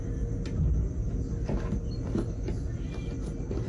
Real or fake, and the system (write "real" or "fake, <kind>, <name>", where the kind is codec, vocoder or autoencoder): real